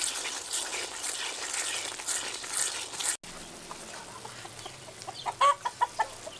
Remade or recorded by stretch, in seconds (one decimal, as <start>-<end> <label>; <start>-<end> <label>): 0.0-6.4 recorded